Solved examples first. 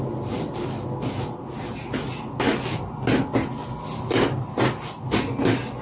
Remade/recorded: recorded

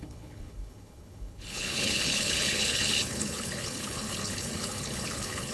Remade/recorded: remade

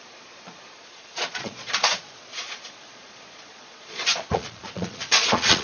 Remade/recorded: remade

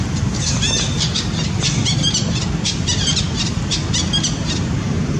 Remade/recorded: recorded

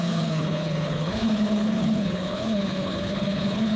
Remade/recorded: remade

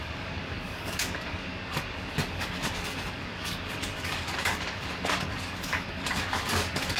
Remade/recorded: remade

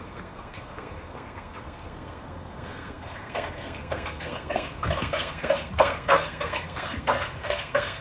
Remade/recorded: remade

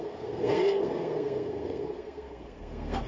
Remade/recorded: remade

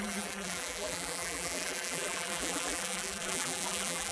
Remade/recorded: remade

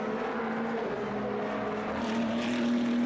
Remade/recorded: recorded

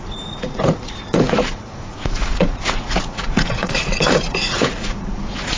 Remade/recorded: remade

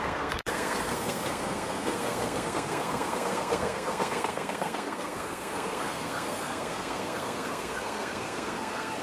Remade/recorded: remade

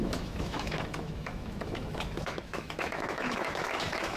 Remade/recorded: remade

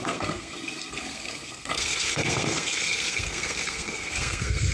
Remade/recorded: remade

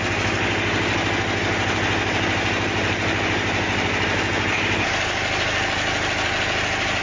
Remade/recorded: recorded